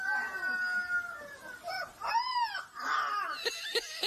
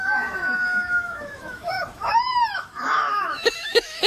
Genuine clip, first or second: first